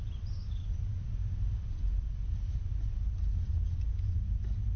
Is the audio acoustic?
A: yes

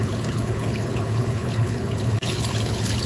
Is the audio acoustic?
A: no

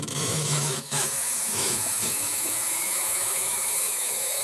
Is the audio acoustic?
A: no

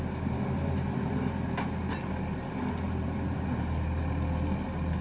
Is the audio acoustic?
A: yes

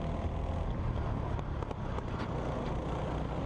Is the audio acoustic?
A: yes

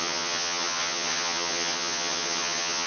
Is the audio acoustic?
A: no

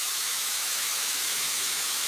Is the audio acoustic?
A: no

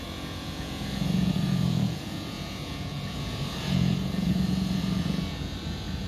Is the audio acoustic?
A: no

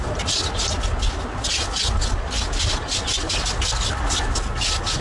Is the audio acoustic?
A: yes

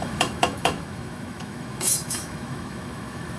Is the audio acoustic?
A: no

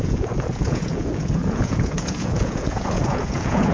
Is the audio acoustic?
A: no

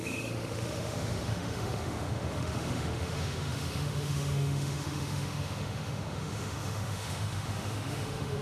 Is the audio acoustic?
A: no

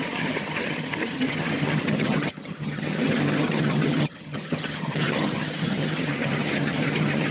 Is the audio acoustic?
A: no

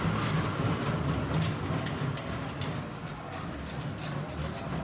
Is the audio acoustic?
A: yes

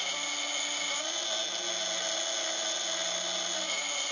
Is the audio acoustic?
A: yes